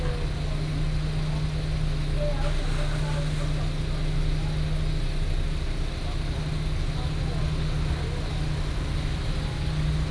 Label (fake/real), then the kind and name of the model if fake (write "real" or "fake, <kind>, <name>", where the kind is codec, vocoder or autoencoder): real